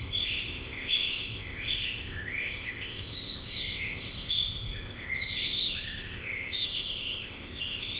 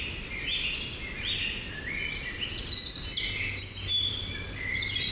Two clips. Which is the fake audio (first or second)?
first